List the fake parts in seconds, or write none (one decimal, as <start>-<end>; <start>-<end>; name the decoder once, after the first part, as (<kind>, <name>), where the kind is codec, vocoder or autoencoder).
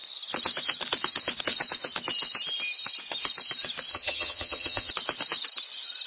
3.9-4.9 (vocoder, HiFi-GAN)